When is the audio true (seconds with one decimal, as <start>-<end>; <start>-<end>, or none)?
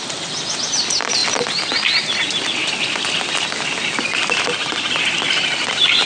0.0-6.1